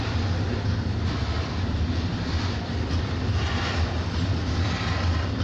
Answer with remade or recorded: recorded